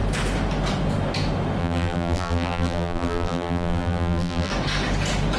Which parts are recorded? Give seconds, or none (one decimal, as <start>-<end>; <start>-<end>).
0.0-1.6; 4.5-5.4